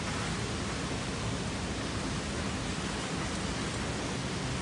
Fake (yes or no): no